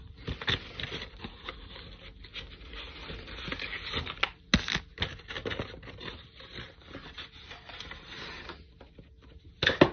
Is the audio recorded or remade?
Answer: recorded